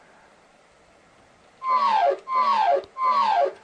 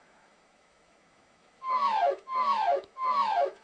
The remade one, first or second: second